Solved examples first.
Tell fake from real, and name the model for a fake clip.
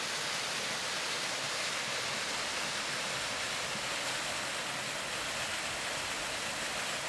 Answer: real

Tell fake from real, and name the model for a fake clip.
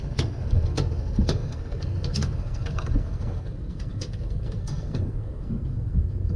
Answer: fake, codec, SNAC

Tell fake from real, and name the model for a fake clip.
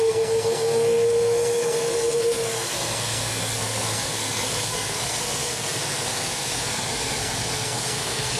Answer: fake, codec, SNAC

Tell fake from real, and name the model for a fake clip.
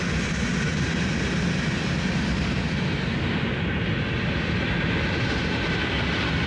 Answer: real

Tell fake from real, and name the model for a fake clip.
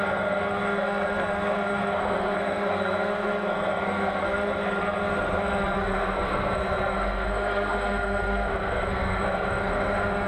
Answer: fake, codec, SNAC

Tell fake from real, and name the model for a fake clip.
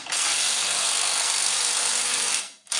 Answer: fake, codec, SNAC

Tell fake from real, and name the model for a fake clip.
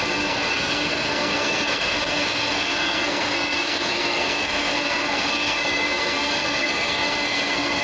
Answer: fake, codec, SNAC